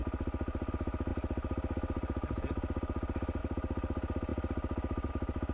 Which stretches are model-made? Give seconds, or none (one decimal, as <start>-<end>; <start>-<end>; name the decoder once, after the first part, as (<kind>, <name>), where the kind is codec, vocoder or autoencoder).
none